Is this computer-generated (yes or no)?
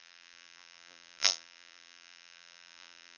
yes